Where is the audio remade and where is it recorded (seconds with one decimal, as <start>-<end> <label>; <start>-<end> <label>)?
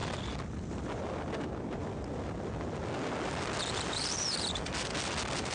0.0-5.5 recorded